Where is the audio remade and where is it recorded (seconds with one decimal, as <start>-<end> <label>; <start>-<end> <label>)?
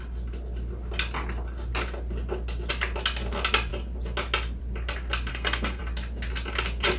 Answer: 0.0-5.3 recorded; 5.3-5.8 remade; 5.8-7.0 recorded